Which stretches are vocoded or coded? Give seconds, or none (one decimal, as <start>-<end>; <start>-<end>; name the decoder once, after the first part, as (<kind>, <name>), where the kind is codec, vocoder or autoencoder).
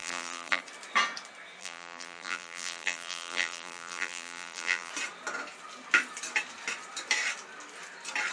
0.0-0.6 (vocoder, BigVGAN v2); 1.6-4.9